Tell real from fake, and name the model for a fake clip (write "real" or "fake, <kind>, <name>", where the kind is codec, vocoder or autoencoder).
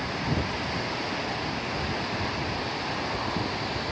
real